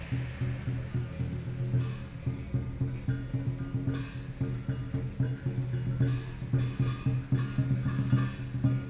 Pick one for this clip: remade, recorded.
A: recorded